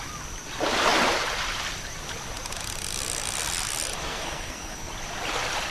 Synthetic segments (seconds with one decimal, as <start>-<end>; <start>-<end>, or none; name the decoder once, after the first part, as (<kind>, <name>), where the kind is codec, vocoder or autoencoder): 4.0-4.9 (codec, SNAC)